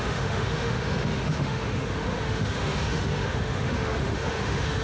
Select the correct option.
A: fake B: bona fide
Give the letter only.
A